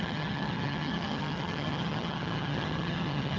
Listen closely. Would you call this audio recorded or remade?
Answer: remade